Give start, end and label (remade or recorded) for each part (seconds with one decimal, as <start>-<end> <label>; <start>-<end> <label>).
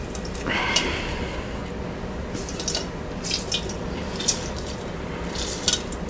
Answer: 0.0-1.6 remade; 1.6-3.6 recorded; 3.6-6.1 remade